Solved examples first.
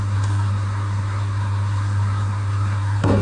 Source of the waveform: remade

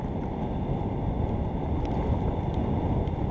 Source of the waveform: recorded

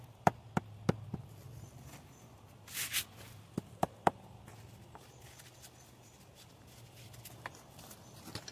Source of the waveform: recorded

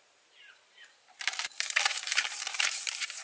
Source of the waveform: remade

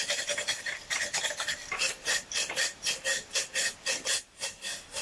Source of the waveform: remade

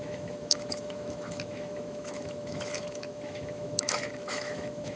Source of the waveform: remade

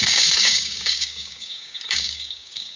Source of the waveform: remade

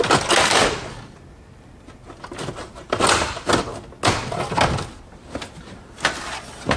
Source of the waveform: recorded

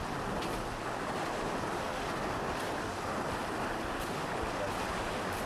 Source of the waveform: recorded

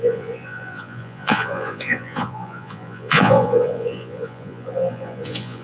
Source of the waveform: remade